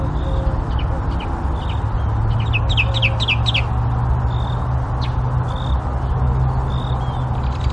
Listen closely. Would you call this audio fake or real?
real